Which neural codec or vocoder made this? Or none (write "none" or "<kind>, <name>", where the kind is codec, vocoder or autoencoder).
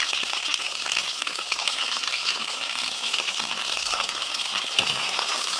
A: codec, SNAC